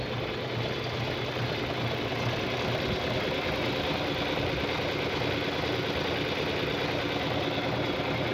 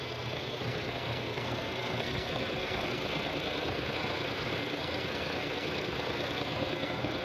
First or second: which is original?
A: first